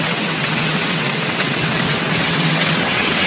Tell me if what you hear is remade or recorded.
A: remade